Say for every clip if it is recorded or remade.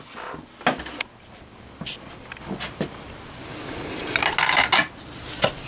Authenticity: recorded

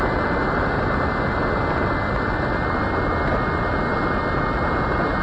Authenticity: recorded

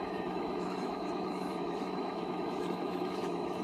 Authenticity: remade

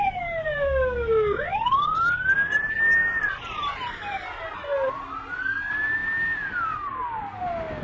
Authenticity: recorded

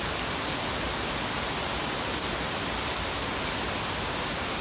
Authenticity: recorded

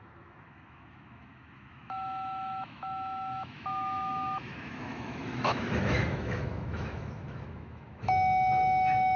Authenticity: remade